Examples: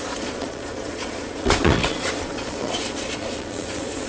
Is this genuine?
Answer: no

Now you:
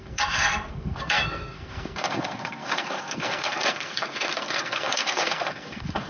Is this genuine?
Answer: no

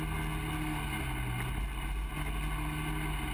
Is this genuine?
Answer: yes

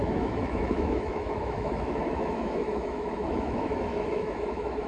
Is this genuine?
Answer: no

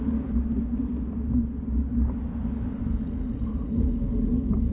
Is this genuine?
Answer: yes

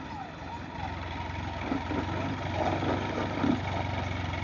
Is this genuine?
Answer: yes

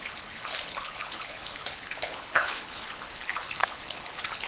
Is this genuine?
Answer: no